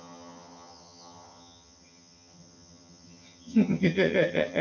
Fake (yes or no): yes